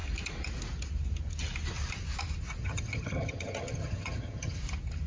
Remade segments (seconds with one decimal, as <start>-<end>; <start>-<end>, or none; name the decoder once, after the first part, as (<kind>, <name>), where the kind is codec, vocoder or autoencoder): 2.6-4.6 (vocoder, HiFi-GAN)